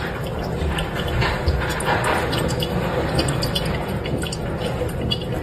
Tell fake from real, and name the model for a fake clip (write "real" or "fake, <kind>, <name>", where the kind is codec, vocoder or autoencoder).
real